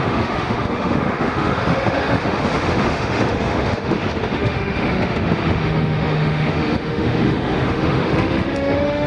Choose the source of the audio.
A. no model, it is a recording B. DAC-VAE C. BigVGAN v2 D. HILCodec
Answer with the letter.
B